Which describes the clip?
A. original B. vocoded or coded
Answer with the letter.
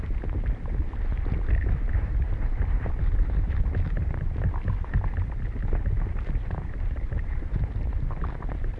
A